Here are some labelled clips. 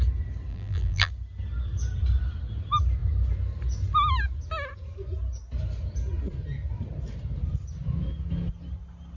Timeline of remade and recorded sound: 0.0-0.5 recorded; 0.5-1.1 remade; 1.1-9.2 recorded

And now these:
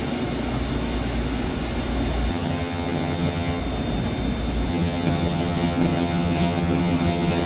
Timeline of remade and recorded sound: 0.0-2.3 recorded; 2.3-3.6 remade; 3.6-4.7 recorded; 4.7-7.5 remade

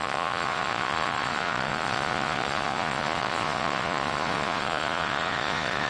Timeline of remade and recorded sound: 0.0-5.9 remade

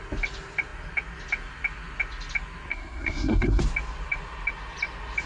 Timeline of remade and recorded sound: 0.0-2.7 recorded; 2.7-3.6 remade; 3.6-5.3 recorded